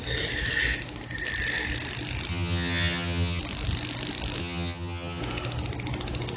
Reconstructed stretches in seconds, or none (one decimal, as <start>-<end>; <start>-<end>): 2.3-3.4; 4.4-5.2